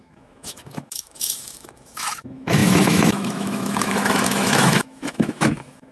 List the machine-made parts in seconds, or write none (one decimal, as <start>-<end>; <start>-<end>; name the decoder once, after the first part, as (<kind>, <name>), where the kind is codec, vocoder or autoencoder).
0.0-5.9 (autoencoder, DAC-VAE)